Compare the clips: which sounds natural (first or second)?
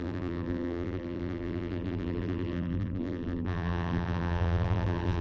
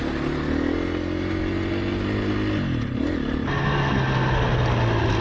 second